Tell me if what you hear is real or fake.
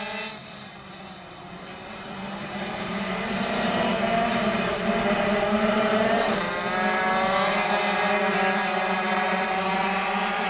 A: fake